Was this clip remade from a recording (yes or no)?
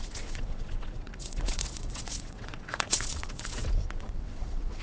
yes